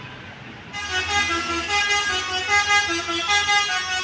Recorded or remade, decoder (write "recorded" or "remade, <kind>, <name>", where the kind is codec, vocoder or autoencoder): recorded